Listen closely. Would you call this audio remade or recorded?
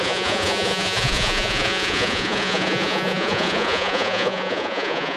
remade